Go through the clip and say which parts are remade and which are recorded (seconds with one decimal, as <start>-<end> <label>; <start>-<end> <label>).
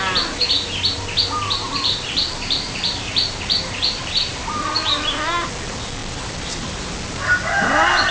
0.0-1.6 recorded; 1.6-5.5 remade; 5.5-6.0 recorded; 6.0-6.9 remade; 6.9-8.1 recorded